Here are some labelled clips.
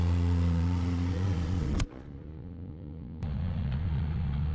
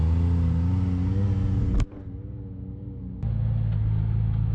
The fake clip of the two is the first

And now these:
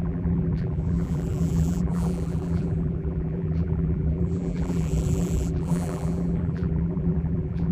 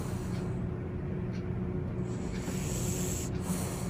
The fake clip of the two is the first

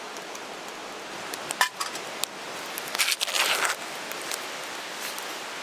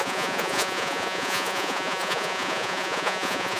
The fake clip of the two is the second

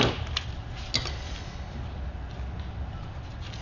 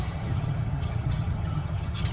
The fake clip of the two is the second